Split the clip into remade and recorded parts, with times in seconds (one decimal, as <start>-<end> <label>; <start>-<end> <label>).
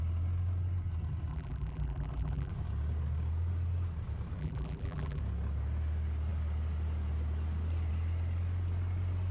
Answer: 0.0-1.3 recorded; 1.3-2.5 remade; 2.5-4.4 recorded; 4.4-5.2 remade; 5.2-9.3 recorded